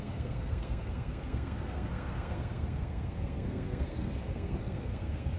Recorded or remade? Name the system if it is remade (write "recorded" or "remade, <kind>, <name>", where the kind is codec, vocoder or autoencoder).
remade, codec, SNAC